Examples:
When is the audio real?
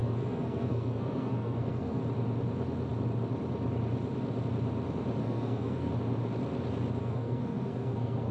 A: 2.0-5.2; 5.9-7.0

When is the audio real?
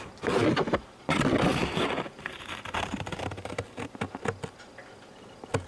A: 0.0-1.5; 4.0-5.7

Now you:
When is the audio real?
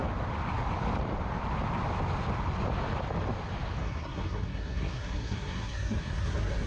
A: 0.0-3.8